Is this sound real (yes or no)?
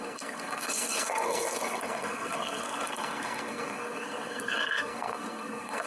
no